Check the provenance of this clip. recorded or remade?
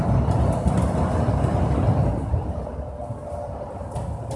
recorded